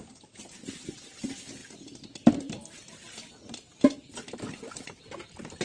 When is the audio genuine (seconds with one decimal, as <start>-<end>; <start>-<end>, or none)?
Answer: 0.0-5.6